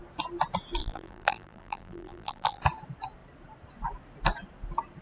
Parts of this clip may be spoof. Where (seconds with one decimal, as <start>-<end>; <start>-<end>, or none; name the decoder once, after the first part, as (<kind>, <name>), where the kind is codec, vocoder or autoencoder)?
0.8-2.6 (vocoder, BigVGAN v2)